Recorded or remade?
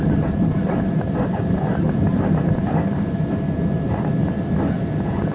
remade